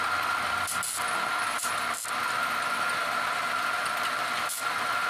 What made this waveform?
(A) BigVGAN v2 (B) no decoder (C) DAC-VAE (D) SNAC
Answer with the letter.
B